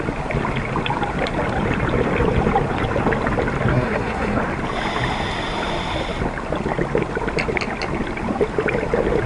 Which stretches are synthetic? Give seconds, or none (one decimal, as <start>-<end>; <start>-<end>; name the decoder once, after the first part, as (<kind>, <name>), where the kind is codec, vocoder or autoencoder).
3.7-4.4 (codec, SNAC)

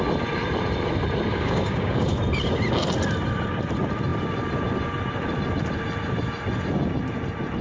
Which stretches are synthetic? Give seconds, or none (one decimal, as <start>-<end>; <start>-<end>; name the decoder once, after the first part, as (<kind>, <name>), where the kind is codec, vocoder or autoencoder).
1.3-2.2 (codec, DAC)

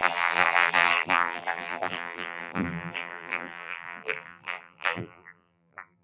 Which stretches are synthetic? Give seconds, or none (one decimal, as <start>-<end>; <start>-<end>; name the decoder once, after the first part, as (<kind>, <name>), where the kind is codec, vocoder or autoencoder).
0.0-6.0 (vocoder, BigVGAN v2)

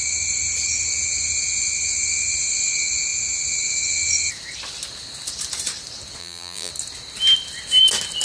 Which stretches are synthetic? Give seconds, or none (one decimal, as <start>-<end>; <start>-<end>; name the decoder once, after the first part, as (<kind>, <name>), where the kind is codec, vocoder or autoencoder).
6.2-6.7 (vocoder, BigVGAN v2)

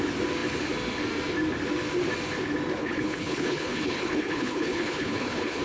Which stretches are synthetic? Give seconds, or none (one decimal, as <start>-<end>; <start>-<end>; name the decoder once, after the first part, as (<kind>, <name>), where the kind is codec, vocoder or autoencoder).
2.8-5.6 (codec, HILCodec)